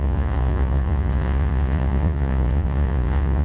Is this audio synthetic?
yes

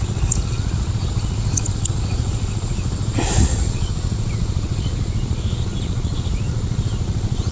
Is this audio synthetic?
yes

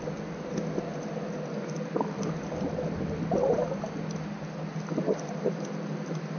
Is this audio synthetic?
no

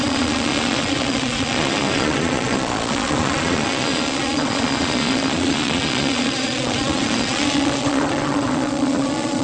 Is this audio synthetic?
yes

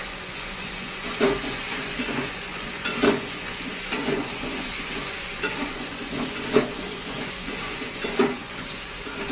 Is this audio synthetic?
yes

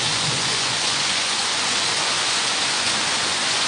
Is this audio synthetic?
yes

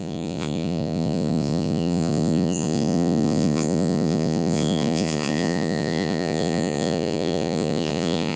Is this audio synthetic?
yes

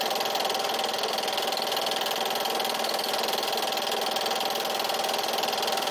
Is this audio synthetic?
no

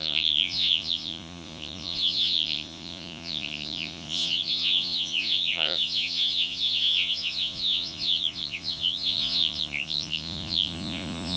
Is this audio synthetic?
yes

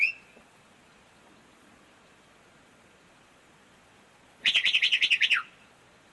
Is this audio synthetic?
yes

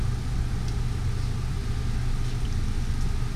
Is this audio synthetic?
no